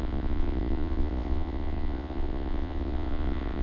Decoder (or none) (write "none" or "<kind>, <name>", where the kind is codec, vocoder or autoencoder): vocoder, Vocos